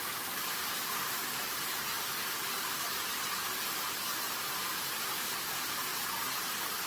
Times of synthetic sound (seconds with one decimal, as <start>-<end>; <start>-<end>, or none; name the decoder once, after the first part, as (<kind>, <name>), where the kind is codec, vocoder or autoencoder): 0.0-5.9 (vocoder, BigVGAN v2); 6.4-6.9